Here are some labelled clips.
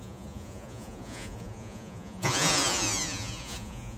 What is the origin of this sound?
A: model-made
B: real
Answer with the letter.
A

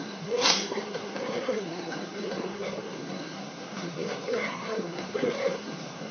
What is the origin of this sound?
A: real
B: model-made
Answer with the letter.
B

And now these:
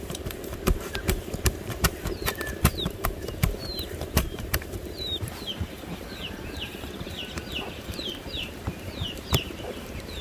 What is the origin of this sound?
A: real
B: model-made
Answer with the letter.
B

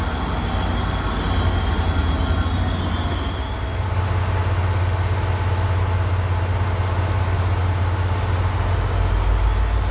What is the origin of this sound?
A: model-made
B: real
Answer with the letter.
B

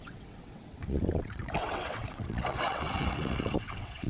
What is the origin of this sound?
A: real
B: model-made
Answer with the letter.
B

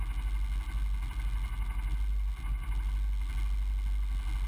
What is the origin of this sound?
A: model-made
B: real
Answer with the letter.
B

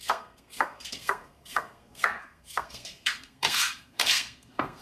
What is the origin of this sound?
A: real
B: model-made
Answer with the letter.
B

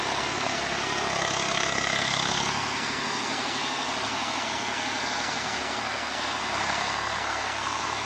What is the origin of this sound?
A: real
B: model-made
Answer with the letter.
B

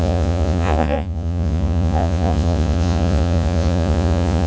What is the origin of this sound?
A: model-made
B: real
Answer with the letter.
A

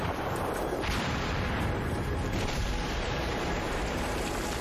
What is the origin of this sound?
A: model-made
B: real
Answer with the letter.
A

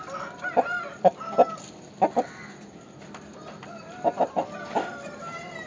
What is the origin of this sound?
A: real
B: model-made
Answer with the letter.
A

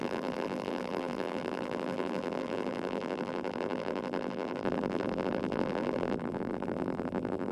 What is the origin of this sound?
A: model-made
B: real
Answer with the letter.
A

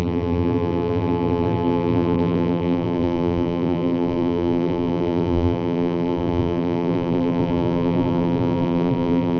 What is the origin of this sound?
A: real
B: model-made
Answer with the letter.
B